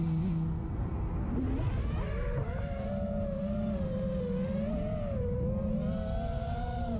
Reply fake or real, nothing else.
real